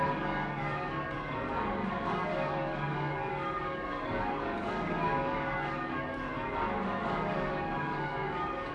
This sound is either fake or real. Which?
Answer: fake